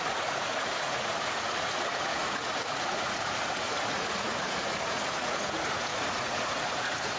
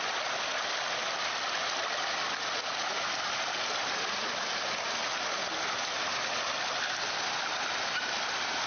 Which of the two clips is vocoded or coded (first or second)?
first